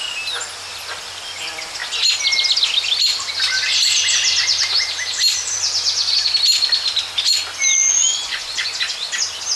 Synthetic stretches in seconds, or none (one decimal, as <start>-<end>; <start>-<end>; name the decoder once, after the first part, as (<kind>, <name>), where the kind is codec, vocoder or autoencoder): 8.1-8.8 (vocoder, Vocos)